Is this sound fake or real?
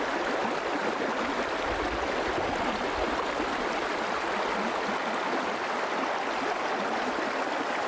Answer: real